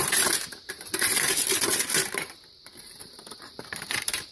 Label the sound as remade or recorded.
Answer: remade